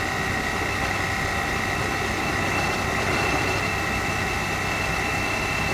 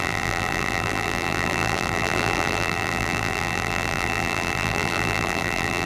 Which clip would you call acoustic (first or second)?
first